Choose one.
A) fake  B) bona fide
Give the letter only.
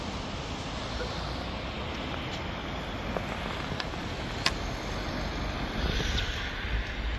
B